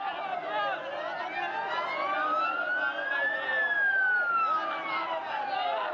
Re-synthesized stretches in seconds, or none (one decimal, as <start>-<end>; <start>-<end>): none